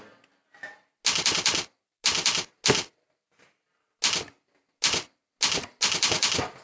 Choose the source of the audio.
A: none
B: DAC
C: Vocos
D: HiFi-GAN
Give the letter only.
A